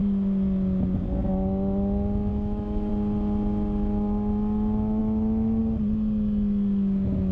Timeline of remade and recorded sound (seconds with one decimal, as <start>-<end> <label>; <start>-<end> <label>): 0.0-2.3 recorded; 2.3-2.9 remade; 2.9-5.0 recorded; 5.0-5.6 remade; 5.6-7.3 recorded